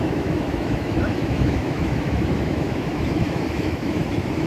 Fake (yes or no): yes